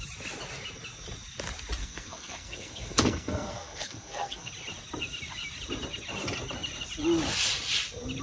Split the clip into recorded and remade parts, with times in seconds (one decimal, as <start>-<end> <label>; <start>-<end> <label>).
0.0-1.8 recorded; 1.8-4.5 remade; 4.5-8.2 recorded